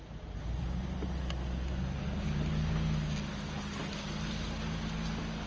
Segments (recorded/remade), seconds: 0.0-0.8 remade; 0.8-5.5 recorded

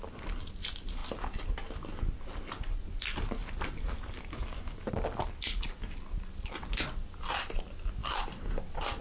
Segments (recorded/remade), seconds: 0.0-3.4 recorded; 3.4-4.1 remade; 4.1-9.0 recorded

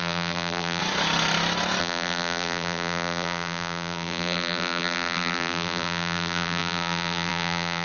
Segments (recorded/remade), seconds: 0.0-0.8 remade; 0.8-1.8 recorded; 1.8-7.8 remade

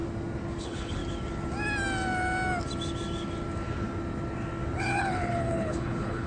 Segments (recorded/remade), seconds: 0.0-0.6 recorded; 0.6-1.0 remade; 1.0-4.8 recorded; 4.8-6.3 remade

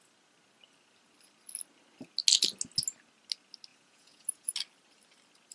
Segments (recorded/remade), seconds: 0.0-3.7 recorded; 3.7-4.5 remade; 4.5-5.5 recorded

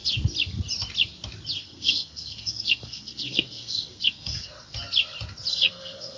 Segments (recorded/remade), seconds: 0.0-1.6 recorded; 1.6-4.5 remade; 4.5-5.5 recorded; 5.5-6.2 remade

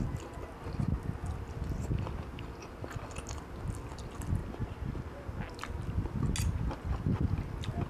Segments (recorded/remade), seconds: 0.0-7.9 recorded

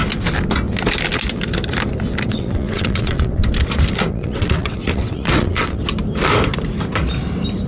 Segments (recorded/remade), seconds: 0.0-2.3 recorded; 2.3-3.4 remade; 3.4-4.1 recorded; 4.1-5.8 remade; 5.8-7.7 recorded